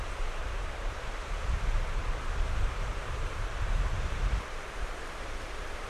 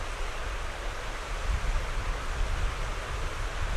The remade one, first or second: first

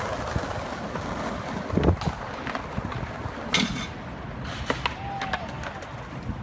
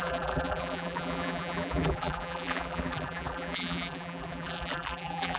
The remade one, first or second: second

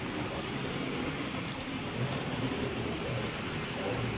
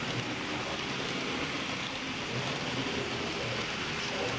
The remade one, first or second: first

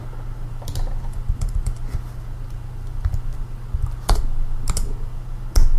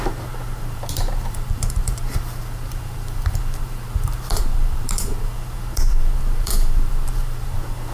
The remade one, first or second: second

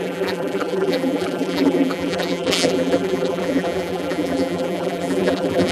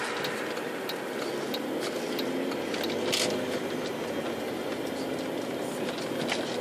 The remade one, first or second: first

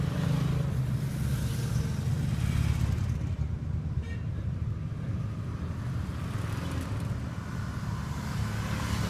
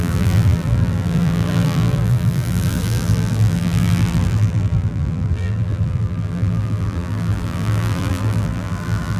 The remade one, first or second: second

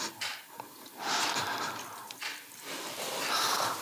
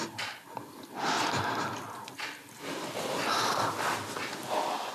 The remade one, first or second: first